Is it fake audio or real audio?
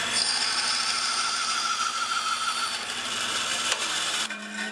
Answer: real